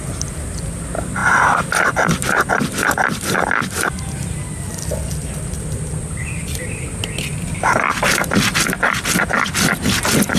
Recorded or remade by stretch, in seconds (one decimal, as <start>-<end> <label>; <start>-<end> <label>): 0.0-10.4 recorded

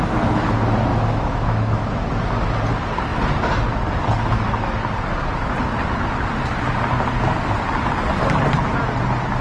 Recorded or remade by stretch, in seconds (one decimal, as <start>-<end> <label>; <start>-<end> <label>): 0.0-0.9 recorded; 0.9-2.1 remade; 2.1-9.4 recorded